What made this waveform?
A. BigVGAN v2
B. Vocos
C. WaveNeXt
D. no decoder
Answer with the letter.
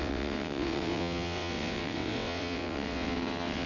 C